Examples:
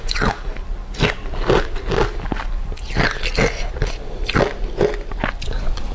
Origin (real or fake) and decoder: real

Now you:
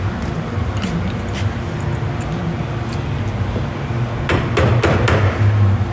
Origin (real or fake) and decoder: real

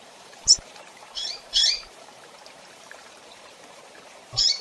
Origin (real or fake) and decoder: fake, vocoder, BigVGAN v2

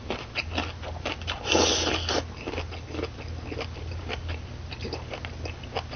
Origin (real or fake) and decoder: real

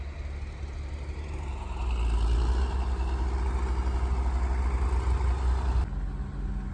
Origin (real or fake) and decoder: real